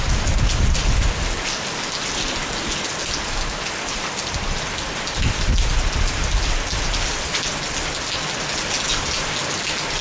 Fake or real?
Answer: real